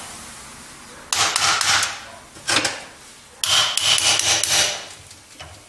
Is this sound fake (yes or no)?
no